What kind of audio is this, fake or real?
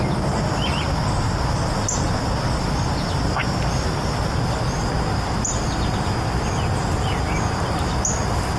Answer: real